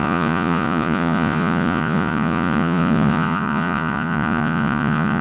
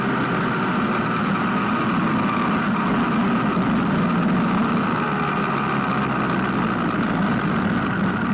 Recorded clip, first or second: second